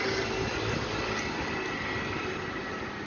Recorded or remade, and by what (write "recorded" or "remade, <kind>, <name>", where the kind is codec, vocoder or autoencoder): recorded